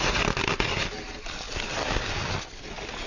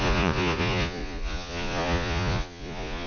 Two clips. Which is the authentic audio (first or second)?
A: first